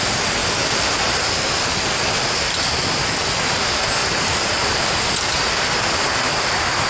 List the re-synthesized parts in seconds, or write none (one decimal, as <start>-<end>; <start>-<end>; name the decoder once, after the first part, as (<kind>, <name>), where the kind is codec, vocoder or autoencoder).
none